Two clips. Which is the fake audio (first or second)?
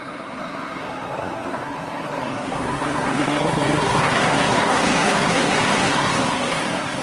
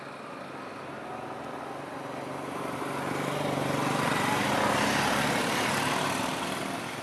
first